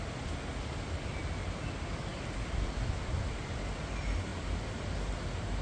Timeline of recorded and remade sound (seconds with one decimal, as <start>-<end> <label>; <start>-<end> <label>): 0.0-4.3 recorded; 4.3-5.6 remade